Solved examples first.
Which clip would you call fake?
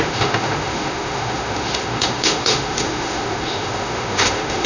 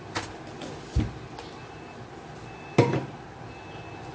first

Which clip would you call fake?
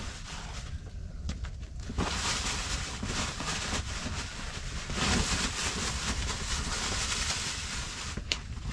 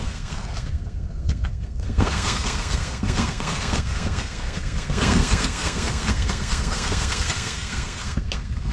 second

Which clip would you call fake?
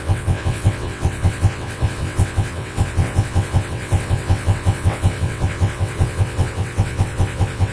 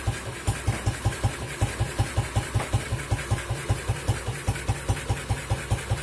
first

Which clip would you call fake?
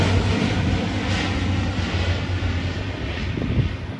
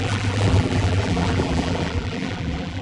second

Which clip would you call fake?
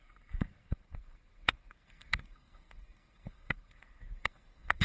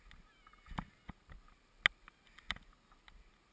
first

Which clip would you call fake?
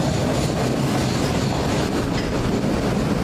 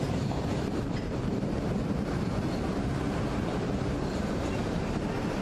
second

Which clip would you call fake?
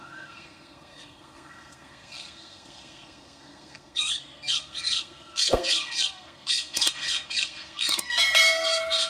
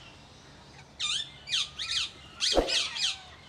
first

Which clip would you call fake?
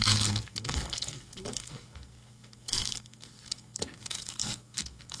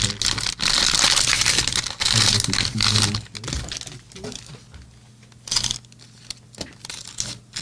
first